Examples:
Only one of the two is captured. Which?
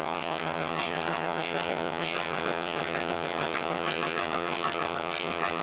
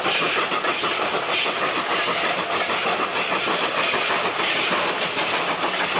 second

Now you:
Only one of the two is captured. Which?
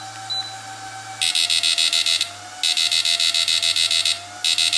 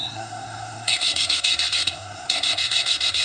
first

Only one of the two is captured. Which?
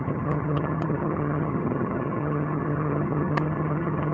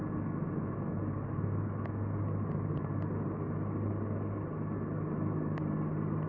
second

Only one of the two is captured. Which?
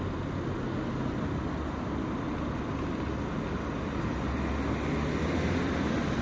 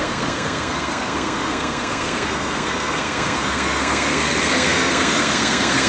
first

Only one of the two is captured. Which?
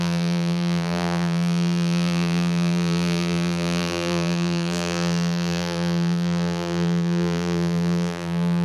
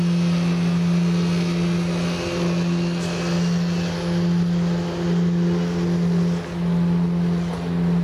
second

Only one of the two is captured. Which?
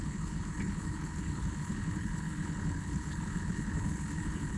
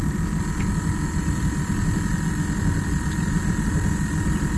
second